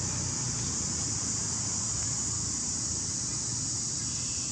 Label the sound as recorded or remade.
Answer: recorded